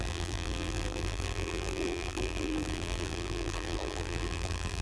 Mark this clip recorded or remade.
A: remade